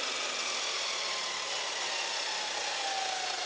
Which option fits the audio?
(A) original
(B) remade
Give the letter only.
A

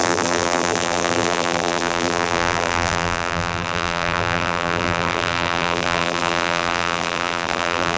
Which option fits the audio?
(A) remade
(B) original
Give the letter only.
A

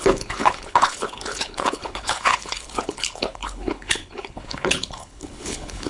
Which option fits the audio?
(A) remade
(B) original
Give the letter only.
A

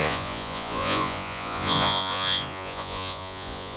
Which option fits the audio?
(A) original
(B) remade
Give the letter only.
B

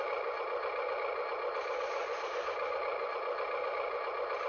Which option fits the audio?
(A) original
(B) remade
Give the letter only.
A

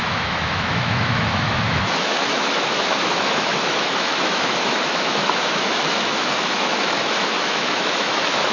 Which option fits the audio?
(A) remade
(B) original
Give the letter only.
A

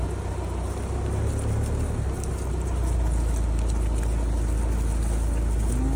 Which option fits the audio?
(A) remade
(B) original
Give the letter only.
B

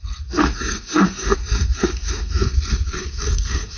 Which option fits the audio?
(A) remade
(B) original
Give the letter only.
A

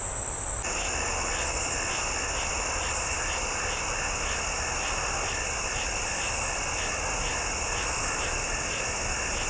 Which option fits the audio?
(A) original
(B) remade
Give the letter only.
A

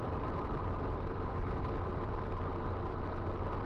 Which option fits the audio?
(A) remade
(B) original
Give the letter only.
A